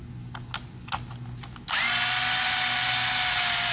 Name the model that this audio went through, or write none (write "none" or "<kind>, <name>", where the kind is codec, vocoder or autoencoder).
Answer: none